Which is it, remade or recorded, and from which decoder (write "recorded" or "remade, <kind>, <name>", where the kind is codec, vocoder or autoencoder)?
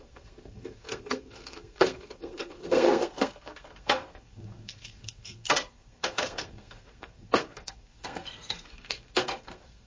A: remade, codec, SNAC